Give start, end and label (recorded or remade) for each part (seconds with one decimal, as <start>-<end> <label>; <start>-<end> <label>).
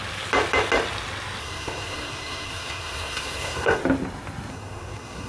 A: 0.0-1.4 recorded; 1.4-3.8 remade; 3.8-4.5 recorded; 4.5-5.3 remade